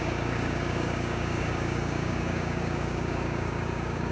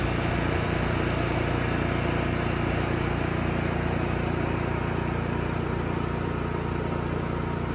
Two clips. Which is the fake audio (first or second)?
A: first